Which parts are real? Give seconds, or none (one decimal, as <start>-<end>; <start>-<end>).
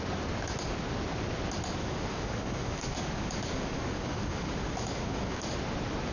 0.0-1.8; 5.5-6.1